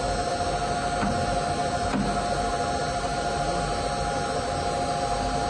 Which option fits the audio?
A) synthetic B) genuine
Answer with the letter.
B